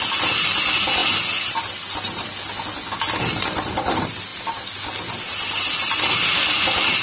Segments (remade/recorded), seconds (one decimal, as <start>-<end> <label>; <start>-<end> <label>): 0.0-7.0 recorded